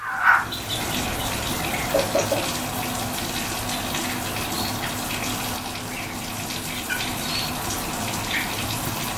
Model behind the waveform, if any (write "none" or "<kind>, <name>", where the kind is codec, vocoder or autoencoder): none